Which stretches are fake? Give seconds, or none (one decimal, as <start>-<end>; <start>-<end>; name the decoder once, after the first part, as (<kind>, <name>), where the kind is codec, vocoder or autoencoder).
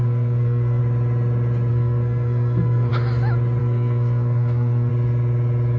0.0-0.8 (codec, SNAC); 1.7-2.9; 3.6-4.9